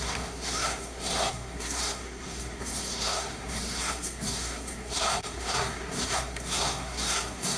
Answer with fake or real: fake